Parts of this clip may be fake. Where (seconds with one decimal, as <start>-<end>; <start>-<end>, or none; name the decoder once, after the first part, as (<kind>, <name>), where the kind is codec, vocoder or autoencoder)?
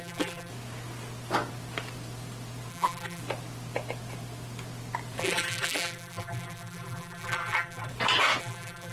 0.0-0.5 (vocoder, BigVGAN v2); 2.7-3.2; 5.2-7.9; 8.4-8.9